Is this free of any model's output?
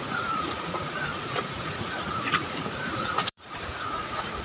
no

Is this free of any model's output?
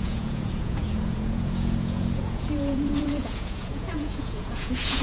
no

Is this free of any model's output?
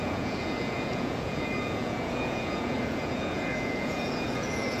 no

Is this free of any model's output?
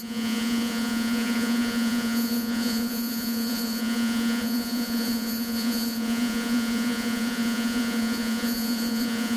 no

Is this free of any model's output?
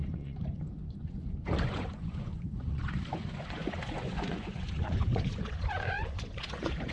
no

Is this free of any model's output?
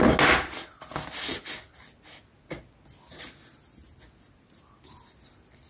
yes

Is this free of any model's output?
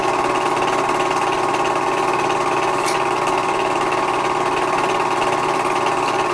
yes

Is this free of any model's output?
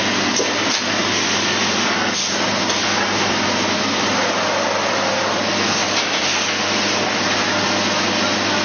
yes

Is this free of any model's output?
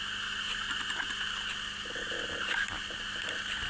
yes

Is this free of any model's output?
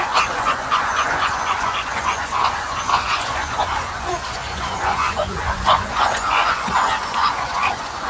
no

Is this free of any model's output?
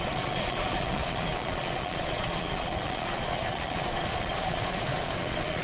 no